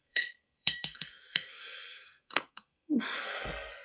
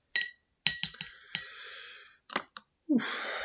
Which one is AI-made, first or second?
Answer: first